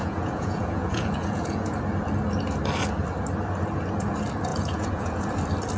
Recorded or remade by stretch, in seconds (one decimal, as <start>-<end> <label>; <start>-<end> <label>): 0.0-1.8 remade; 1.8-4.5 recorded; 4.5-5.3 remade; 5.3-5.8 recorded